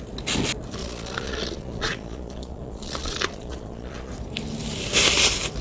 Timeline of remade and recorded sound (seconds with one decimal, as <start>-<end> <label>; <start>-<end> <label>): 0.0-0.8 recorded; 0.8-4.1 remade; 4.1-5.6 recorded